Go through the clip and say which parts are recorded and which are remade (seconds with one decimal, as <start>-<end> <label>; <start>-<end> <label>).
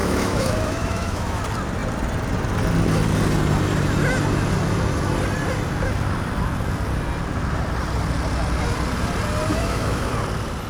0.0-1.4 remade; 1.4-9.5 recorded; 9.5-10.1 remade; 10.1-10.7 recorded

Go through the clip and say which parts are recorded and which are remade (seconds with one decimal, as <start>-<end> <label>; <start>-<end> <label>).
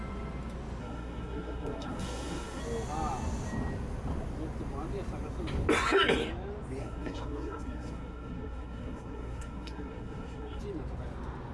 0.0-0.8 recorded; 0.8-2.6 remade; 2.6-6.8 recorded; 6.8-10.6 remade; 10.6-11.5 recorded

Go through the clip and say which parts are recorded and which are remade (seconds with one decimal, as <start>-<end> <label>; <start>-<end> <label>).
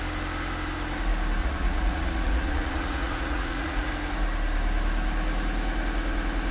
0.0-1.4 recorded; 1.4-3.9 remade; 3.9-6.5 recorded